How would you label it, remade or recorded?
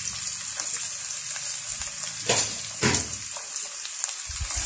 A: recorded